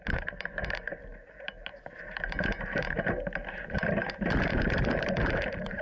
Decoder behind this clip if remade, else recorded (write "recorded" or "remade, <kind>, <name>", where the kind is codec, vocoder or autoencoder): remade, vocoder, BigVGAN v2